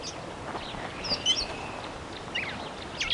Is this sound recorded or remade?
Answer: recorded